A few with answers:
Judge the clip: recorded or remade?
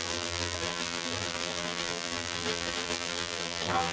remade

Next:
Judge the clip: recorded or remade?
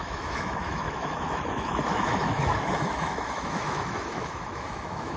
remade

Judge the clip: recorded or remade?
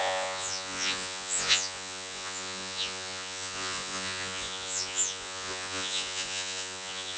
remade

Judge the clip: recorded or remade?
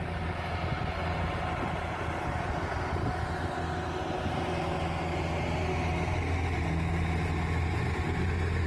recorded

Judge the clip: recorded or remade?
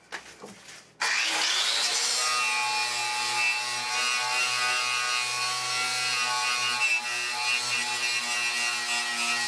recorded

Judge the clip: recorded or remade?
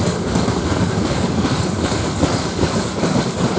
remade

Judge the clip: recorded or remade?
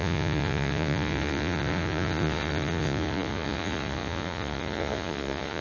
remade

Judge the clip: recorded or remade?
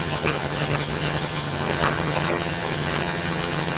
remade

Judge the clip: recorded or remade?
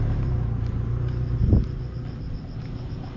recorded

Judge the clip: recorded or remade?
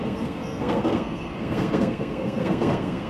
remade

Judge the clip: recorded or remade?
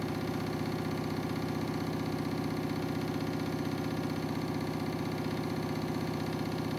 recorded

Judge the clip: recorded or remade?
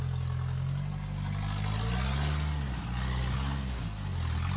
recorded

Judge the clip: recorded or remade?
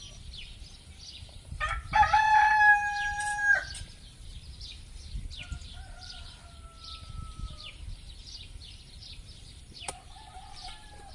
remade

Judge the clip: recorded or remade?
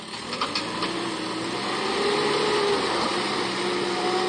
recorded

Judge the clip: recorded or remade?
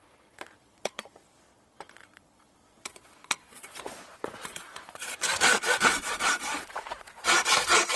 remade